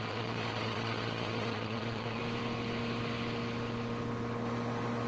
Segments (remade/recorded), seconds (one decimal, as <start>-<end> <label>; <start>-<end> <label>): 0.0-2.2 remade; 2.2-5.1 recorded